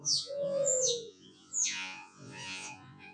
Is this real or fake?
fake